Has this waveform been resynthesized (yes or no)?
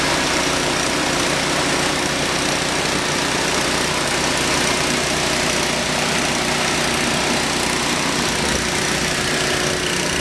no